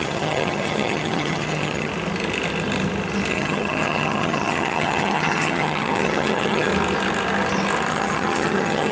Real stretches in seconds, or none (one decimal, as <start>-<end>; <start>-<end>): 1.9-3.3; 6.7-7.9

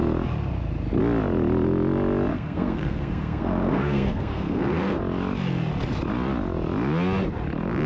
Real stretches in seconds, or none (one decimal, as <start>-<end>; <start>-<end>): 0.0-2.3; 5.0-7.9

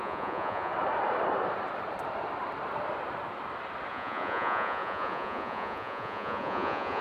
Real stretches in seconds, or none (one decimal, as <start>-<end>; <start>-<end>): 0.7-3.9

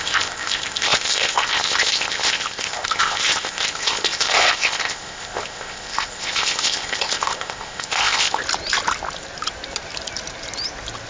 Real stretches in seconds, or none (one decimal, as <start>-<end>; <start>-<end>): 8.4-11.1

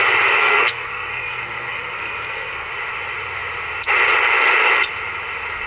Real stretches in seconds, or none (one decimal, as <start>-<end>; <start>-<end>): 0.0-0.4; 2.7-5.7

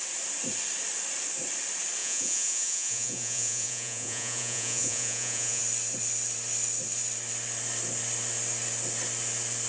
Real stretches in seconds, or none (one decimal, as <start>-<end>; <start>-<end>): 0.0-2.0; 5.6-9.7

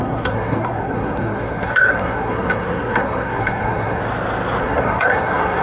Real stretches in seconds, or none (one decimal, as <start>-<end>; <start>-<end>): 4.0-4.6